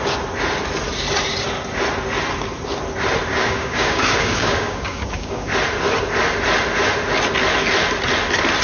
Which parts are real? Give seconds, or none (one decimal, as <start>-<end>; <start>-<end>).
0.0-3.3; 5.5-8.6